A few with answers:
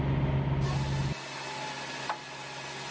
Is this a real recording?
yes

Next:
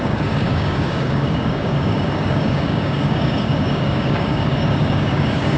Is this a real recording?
no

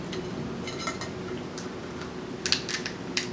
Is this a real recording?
yes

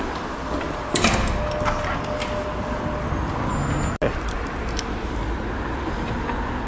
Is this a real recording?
yes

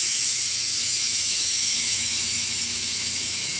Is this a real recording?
no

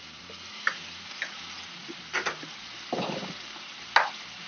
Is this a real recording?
yes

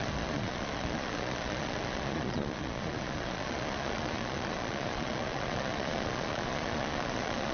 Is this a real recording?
no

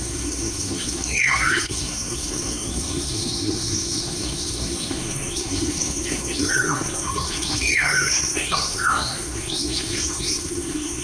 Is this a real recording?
no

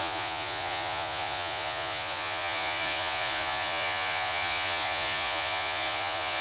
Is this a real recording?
no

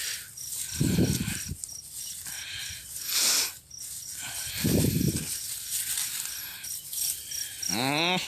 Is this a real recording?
yes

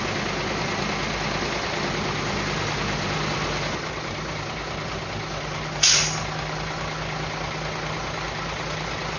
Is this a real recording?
yes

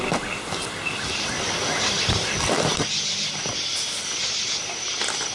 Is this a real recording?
yes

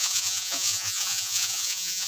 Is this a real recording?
no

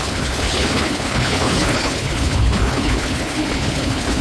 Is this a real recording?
no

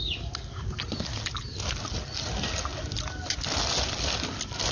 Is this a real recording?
yes